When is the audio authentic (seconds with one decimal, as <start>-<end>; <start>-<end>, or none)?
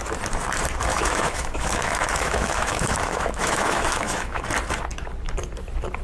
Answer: 0.0-0.9; 4.4-6.0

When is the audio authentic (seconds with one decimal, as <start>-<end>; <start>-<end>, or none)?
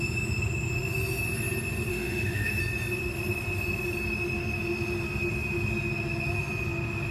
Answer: 0.0-1.9; 2.6-7.1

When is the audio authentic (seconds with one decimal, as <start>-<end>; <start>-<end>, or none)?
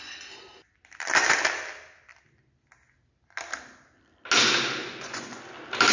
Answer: 0.0-4.8; 5.4-5.9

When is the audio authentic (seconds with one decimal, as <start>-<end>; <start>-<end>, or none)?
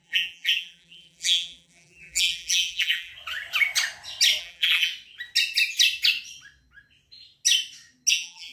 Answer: 3.1-4.4; 4.9-8.1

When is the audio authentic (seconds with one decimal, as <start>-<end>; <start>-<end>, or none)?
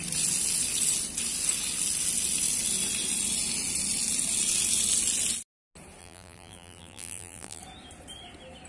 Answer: 0.0-6.0; 7.6-8.7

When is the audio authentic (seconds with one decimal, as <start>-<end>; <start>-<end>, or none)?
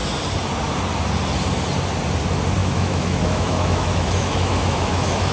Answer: 0.0-2.6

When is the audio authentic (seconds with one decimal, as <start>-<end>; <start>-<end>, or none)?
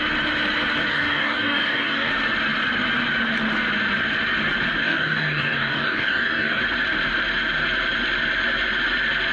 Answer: 0.0-0.9; 2.1-4.8; 6.6-9.3